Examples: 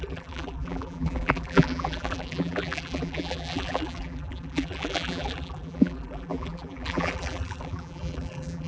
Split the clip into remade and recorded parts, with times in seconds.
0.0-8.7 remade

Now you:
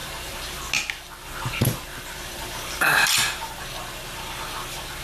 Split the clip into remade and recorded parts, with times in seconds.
0.0-0.6 remade; 0.6-1.9 recorded; 1.9-3.6 remade; 3.6-5.0 recorded